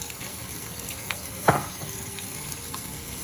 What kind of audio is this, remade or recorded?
remade